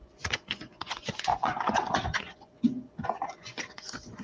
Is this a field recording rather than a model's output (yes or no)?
no